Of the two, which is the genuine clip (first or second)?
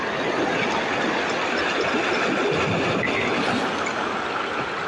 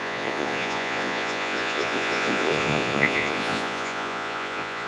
first